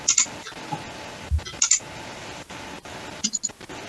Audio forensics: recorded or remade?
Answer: recorded